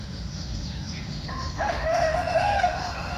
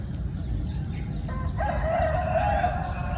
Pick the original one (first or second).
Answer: second